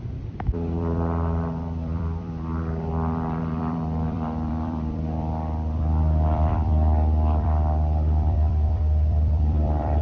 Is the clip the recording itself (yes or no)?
no